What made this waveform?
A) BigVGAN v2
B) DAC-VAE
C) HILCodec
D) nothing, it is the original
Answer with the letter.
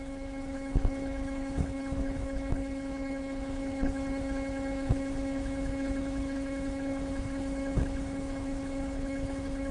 C